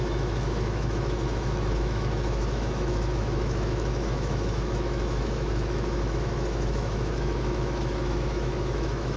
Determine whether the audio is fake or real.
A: fake